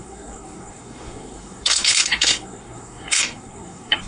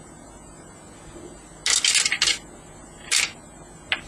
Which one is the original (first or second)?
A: second